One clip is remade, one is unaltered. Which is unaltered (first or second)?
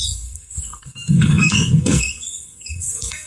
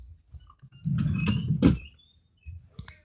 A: second